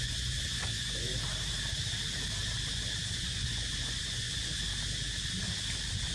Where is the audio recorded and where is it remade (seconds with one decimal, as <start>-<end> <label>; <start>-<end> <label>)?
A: 0.0-1.1 remade; 1.1-3.1 recorded; 3.1-4.7 remade; 4.7-6.1 recorded